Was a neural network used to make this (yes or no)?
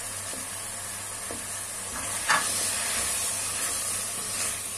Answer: no